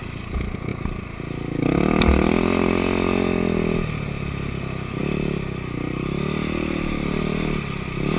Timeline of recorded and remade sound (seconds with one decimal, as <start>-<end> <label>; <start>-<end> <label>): 0.0-8.2 recorded